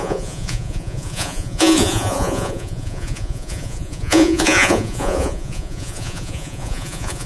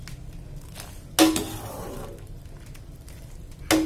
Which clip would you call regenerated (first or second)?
first